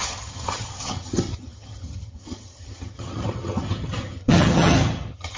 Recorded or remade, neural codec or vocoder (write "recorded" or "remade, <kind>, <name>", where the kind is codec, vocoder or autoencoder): remade, vocoder, HiFi-GAN